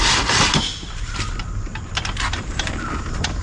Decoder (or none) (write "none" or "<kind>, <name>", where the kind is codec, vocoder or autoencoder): vocoder, BigVGAN v2